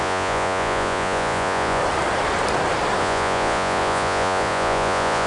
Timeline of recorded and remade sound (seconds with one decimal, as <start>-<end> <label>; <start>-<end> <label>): 0.0-1.8 remade; 1.8-3.0 recorded; 3.0-5.3 remade